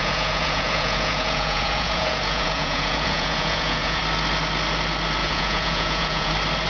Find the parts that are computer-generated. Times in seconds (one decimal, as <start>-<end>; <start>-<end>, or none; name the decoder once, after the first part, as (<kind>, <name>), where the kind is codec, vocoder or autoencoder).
0.0-4.0 (vocoder, Vocos); 5.2-6.3